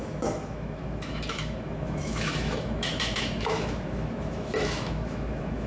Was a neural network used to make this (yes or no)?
yes